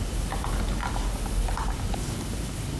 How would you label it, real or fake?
fake